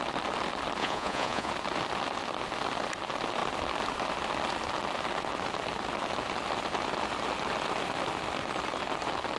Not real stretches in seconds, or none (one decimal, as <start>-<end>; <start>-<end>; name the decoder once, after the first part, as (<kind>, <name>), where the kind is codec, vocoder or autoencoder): 0.8-1.5 (vocoder, Vocos)